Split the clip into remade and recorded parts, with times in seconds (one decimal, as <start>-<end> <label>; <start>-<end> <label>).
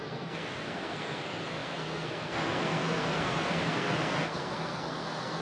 0.0-5.4 remade